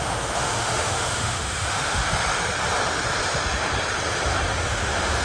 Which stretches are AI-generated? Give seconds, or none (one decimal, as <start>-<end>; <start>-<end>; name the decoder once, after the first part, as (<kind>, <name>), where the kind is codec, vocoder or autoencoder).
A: 0.0-2.0 (autoencoder, DAC-VAE); 4.7-5.2

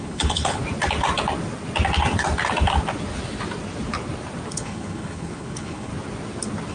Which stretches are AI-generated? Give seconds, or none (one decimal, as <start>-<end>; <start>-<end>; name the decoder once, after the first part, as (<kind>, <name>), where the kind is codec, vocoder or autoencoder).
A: 0.0-0.6 (codec, HILCodec); 4.5-5.9

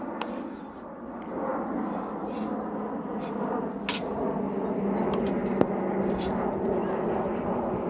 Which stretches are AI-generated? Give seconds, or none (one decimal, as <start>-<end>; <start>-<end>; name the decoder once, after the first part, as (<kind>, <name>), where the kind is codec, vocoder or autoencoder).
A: none

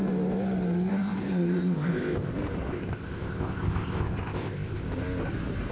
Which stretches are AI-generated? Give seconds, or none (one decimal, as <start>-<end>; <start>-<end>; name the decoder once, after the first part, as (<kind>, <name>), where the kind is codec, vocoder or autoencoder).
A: 0.9-2.3 (codec, ZipCodec); 2.7-4.9

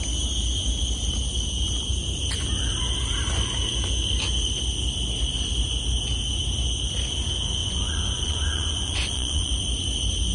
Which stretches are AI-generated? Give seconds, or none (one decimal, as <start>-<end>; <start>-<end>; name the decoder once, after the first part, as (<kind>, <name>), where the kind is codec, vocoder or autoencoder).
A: 7.6-9.5 (vocoder, Vocos)

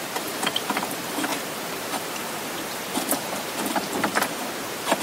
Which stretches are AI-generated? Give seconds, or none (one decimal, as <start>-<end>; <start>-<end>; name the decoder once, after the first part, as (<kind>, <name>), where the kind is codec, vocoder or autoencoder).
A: 0.0-4.1 (vocoder, BigVGAN v2); 4.6-5.0